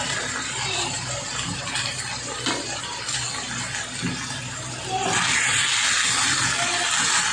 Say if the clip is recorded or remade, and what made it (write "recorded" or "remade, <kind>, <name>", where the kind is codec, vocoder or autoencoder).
recorded